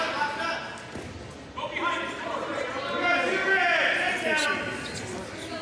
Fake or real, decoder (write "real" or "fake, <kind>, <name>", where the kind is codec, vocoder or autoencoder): real